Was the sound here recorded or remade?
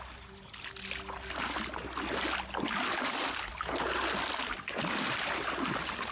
recorded